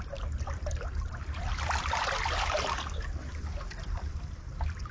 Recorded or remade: recorded